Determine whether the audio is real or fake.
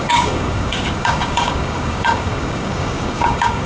fake